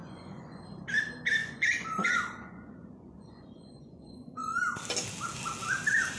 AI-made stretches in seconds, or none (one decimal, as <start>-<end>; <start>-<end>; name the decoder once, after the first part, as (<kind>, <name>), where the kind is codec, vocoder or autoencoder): 0.0-0.6 (vocoder, Vocos); 1.4-4.6